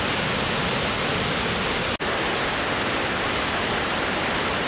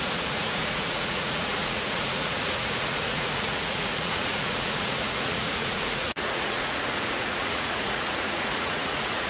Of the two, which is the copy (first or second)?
second